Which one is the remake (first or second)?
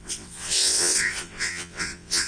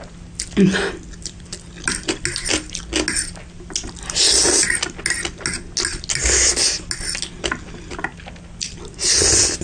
first